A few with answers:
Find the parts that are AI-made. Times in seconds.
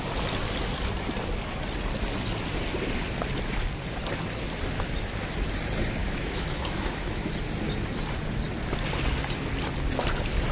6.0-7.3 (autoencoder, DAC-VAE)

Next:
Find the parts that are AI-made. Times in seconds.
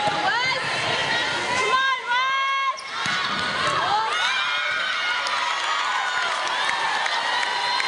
none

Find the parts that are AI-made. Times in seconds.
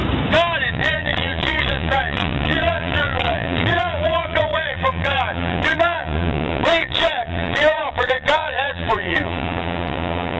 0.7-10.4 (vocoder, Vocos)